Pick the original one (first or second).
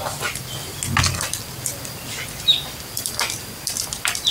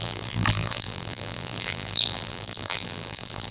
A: first